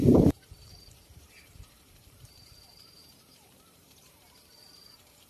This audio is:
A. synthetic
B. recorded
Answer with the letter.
A